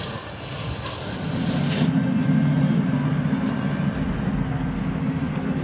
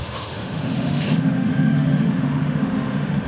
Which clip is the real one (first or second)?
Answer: first